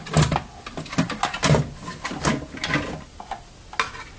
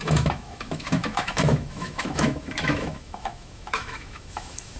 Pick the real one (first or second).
first